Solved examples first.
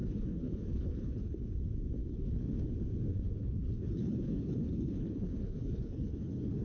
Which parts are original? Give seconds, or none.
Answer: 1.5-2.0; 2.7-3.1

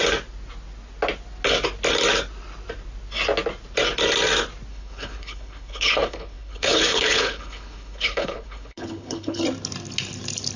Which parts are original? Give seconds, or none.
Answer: 0.0-4.7; 9.4-10.6